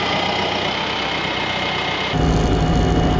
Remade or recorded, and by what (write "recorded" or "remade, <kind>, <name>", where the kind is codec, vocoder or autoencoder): recorded